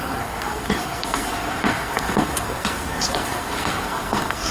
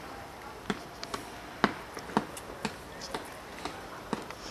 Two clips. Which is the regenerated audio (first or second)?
first